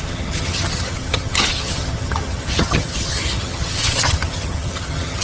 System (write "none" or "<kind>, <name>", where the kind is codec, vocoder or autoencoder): vocoder, HiFi-GAN